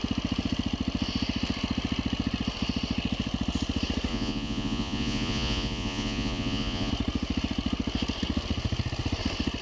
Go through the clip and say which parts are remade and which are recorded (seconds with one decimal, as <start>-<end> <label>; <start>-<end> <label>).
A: 0.0-4.1 recorded; 4.1-6.9 remade; 6.9-9.6 recorded